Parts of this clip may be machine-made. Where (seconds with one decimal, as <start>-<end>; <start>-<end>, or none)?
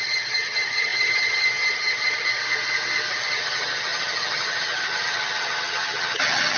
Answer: 0.0-2.4; 3.1-6.6